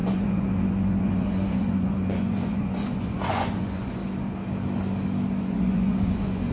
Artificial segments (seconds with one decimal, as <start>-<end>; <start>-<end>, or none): 0.0-4.0; 5.4-6.5